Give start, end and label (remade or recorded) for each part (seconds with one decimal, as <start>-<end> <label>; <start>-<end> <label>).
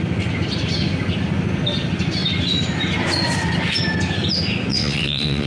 0.0-4.7 recorded; 4.7-5.5 remade